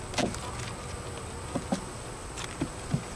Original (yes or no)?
yes